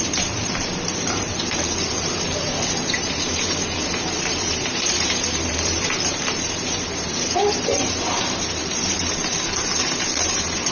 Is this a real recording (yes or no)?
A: no